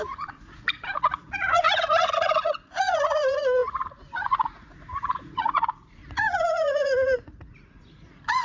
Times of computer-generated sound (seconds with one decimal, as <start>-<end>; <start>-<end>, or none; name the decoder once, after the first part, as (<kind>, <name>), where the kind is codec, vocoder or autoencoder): 0.0-8.4 (vocoder, Vocos)